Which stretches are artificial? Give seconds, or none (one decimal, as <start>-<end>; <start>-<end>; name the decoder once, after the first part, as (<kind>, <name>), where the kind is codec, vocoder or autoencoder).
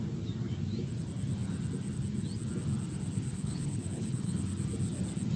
3.3-4.4 (codec, HILCodec)